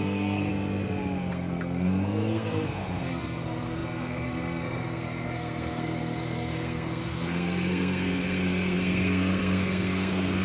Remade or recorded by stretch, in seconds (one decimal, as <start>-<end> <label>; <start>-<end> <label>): 0.0-0.5 remade; 0.5-1.3 recorded; 1.3-10.4 remade